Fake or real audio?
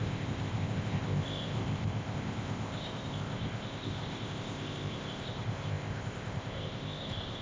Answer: fake